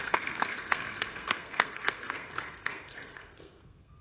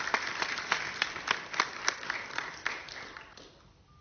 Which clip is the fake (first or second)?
first